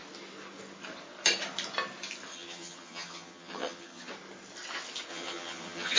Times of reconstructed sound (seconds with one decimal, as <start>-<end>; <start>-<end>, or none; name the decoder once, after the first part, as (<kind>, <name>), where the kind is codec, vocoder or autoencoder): 2.3-4.1 (vocoder, HiFi-GAN); 5.1-6.0